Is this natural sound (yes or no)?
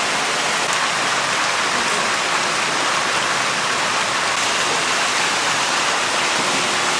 yes